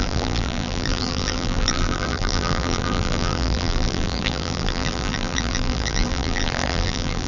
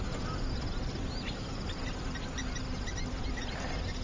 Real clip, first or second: second